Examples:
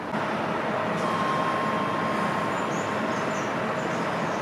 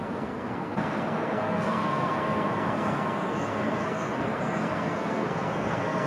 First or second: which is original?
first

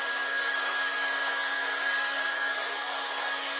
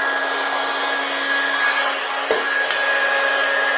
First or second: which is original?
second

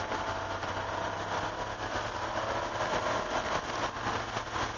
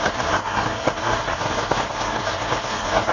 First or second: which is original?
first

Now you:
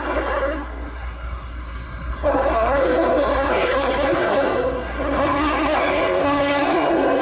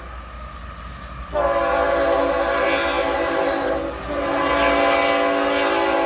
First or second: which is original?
second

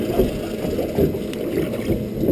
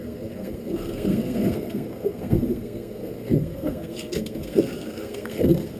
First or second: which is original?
first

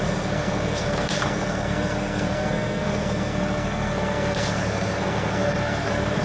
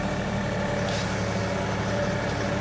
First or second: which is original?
second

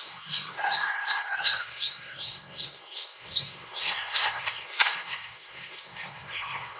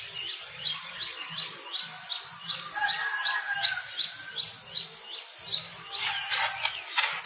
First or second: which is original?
second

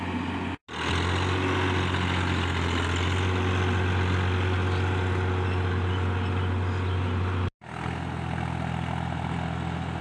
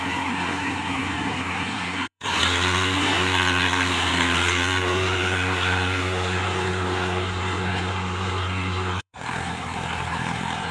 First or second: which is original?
first